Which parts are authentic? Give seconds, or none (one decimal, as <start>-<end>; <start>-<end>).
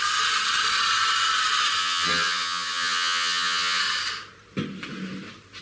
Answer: 0.0-1.8; 3.8-5.6